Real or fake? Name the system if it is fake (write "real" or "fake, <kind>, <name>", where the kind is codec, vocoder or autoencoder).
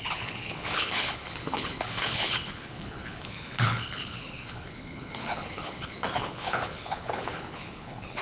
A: fake, codec, HILCodec